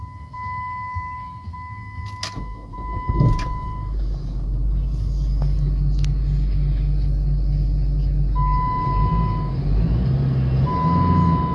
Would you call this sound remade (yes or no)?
no